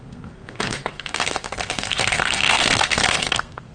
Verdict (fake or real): fake